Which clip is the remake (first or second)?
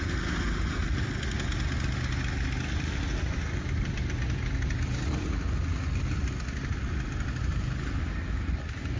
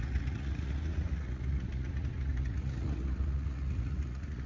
second